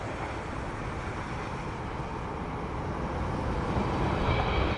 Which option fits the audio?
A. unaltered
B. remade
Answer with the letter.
A